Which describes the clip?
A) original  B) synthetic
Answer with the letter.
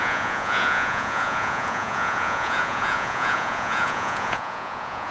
B